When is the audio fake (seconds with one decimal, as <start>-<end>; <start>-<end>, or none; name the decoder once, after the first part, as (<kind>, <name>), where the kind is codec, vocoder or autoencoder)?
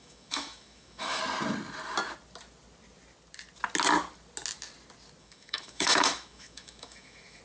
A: 0.0-1.2 (autoencoder, DAC-VAE); 5.2-7.4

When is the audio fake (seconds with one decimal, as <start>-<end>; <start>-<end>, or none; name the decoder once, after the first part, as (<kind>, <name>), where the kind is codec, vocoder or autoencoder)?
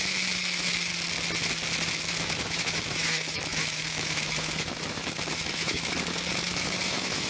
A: 0.0-0.9 (autoencoder, DAC-VAE); 1.9-7.3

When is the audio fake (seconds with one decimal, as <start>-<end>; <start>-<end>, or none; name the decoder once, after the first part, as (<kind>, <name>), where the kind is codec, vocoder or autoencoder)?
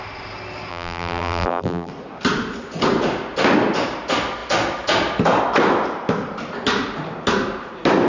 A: 0.7-1.9 (vocoder, BigVGAN v2)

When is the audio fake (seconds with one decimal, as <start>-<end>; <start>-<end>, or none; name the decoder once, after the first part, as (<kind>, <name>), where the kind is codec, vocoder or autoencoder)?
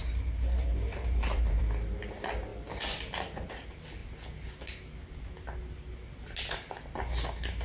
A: 0.0-1.6 (vocoder, BigVGAN v2)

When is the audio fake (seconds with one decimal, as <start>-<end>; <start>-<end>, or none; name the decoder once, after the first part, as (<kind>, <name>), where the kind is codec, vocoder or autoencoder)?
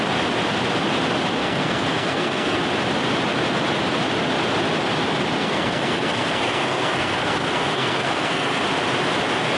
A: 1.4-2.6 (codec, SNAC); 5.4-8.6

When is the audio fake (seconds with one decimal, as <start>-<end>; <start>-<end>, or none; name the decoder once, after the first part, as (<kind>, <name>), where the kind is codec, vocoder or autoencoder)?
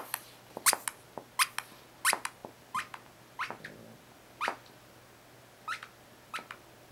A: none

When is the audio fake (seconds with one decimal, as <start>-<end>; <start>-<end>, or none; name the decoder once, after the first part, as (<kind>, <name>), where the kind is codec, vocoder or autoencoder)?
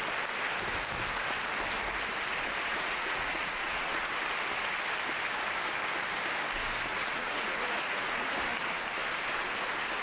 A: 2.7-4.1 (vocoder, Vocos); 6.9-8.3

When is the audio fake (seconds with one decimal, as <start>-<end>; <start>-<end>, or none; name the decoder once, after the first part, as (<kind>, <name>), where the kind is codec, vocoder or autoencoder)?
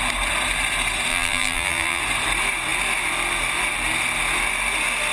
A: 1.1-2.0 (vocoder, BigVGAN v2)